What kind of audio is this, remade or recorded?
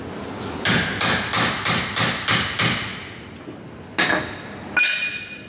recorded